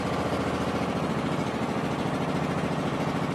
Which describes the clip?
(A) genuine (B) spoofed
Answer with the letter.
A